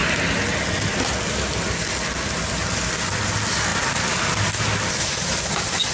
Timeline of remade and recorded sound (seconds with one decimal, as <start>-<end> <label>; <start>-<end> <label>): 0.0-5.9 recorded